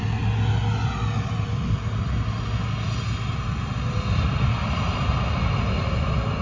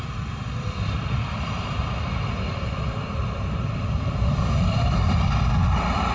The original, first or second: first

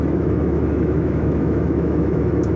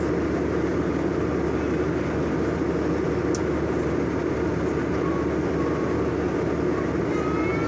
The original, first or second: second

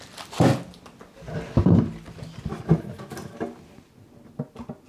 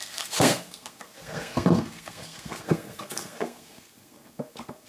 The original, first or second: first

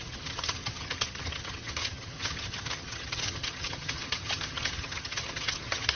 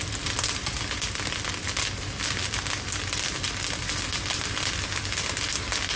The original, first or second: second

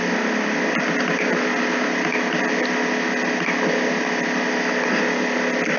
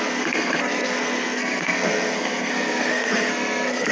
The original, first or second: first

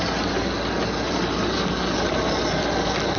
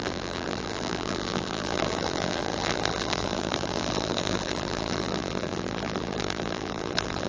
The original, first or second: first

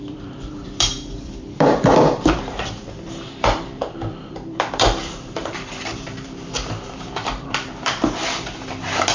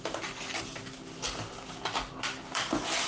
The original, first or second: second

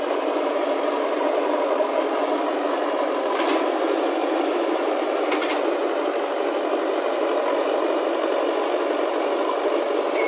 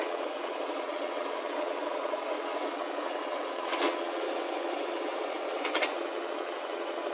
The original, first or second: first